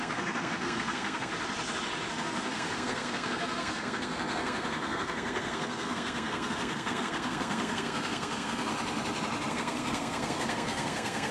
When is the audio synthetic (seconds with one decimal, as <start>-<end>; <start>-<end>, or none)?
0.0-1.3; 2.1-8.7; 9.5-11.3